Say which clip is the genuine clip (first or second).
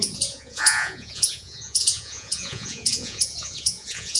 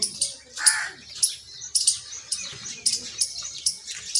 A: second